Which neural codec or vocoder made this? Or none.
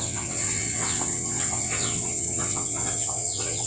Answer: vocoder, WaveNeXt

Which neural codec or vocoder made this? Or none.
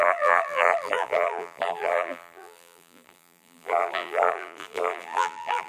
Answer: vocoder, BigVGAN v2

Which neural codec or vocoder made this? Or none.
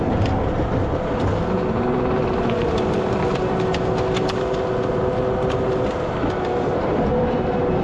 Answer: none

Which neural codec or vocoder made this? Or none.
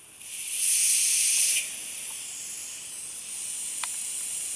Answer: none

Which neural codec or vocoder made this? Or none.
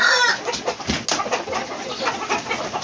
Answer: none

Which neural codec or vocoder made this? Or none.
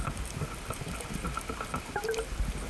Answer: none